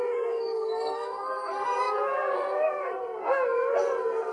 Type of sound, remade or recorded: remade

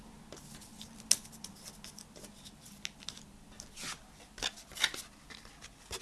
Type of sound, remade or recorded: recorded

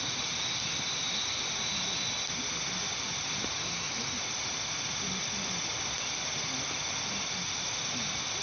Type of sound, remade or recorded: recorded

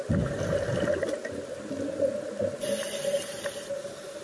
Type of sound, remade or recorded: recorded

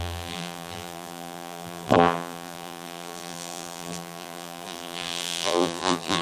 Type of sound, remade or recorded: remade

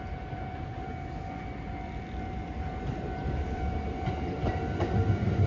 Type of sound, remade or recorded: remade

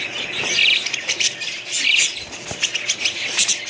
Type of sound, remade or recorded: recorded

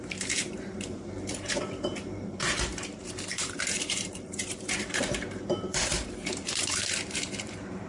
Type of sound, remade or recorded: remade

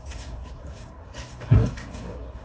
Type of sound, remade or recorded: remade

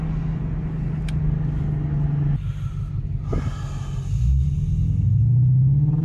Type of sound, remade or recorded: recorded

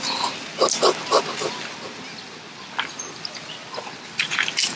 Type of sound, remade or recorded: recorded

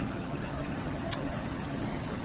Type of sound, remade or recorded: remade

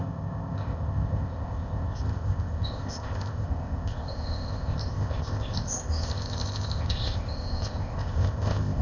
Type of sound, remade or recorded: remade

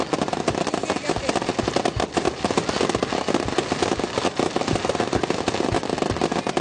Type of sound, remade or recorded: recorded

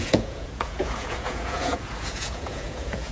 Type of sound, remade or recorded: remade